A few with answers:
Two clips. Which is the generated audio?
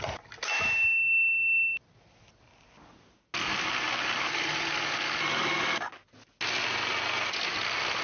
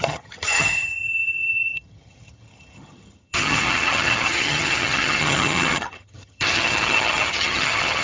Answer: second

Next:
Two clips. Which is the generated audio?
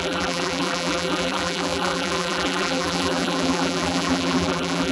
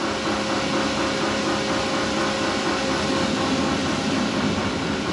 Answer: first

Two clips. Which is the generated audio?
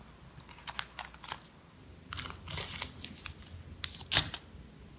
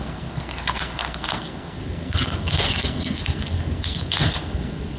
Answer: second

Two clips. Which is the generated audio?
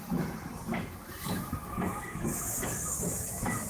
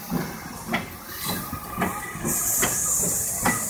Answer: first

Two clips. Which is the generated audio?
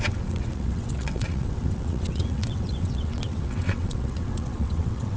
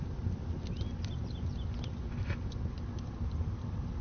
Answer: first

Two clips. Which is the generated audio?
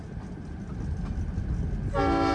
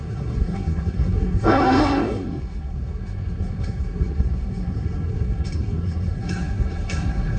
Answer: second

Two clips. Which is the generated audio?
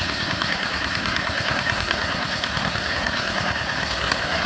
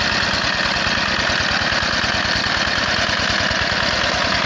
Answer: first